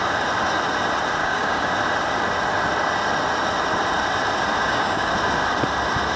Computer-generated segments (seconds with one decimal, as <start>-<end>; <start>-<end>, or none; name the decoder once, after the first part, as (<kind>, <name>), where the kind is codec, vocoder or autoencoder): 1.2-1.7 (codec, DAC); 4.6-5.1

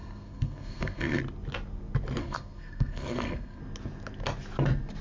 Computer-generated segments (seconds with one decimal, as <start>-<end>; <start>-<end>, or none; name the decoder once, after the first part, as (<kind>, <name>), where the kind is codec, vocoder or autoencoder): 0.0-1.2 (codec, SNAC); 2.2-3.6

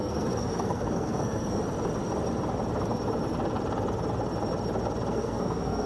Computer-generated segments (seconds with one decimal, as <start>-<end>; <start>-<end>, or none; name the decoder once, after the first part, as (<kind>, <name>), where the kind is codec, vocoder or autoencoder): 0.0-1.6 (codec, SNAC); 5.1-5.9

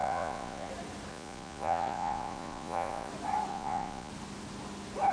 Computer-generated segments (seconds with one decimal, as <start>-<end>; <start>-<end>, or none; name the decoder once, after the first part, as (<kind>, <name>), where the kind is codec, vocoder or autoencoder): 0.0-0.7 (vocoder, Vocos); 1.1-3.1; 3.5-4.1

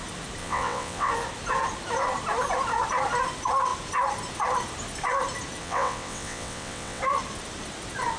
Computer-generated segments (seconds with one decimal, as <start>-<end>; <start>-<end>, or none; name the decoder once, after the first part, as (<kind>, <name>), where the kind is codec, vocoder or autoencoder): 0.4-1.1 (vocoder, WaveNeXt); 5.6-7.0

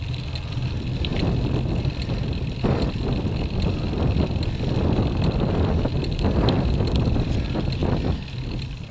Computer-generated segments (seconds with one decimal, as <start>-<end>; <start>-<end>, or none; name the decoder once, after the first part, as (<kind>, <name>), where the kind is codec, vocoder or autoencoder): none

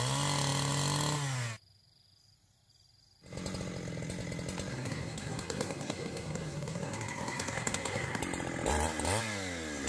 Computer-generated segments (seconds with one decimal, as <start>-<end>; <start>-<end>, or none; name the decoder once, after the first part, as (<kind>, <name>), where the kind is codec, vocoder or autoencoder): 4.7-8.2 (codec, SNAC)